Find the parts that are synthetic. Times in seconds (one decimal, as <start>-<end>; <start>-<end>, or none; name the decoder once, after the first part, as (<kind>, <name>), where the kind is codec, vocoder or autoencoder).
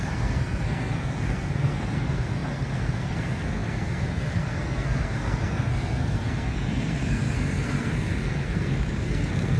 0.0-9.6 (codec, SNAC)